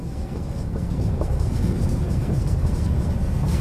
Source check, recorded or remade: remade